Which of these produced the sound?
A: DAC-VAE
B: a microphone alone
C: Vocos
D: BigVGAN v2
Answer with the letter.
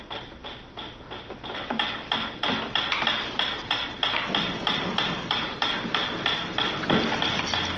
B